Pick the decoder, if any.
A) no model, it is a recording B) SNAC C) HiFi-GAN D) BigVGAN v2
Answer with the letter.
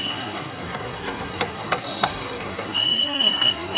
B